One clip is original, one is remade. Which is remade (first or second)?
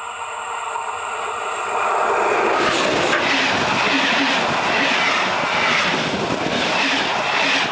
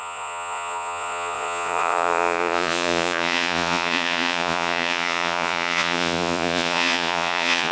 second